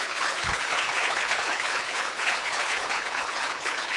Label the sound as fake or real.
fake